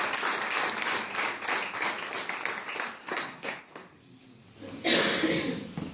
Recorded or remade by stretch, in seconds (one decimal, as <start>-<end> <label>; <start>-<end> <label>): 0.0-3.0 recorded; 3.0-3.6 remade; 3.6-5.9 recorded